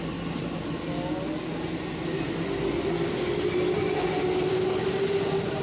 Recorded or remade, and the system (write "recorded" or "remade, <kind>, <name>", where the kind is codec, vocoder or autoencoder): recorded